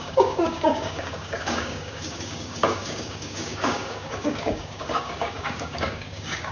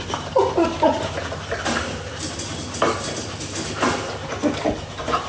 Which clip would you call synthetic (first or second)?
first